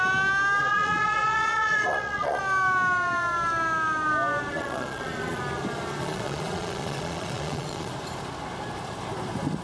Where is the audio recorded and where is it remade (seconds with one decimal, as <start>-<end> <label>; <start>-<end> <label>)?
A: 0.0-0.6 recorded; 0.6-2.4 remade; 2.4-4.5 recorded; 4.5-5.4 remade; 5.4-6.0 recorded; 6.0-7.9 remade; 7.9-9.6 recorded

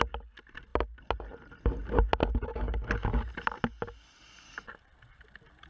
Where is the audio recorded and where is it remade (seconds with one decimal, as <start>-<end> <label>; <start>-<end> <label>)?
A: 0.0-5.7 recorded

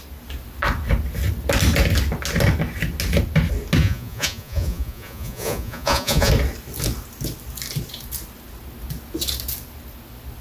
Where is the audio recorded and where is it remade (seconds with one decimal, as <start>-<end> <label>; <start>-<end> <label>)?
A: 0.0-3.8 recorded; 3.8-6.3 remade; 6.3-10.4 recorded

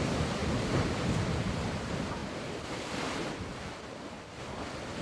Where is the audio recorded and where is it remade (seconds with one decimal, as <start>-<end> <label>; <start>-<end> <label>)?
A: 0.0-5.0 recorded

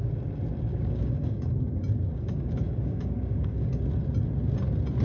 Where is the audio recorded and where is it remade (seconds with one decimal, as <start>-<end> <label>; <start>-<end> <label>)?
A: 0.0-0.7 recorded; 0.7-1.6 remade; 1.6-2.1 recorded; 2.1-3.8 remade; 3.8-5.0 recorded

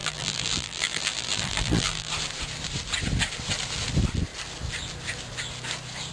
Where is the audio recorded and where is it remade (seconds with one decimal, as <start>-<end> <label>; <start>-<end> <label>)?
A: 0.0-2.1 remade; 2.1-6.1 recorded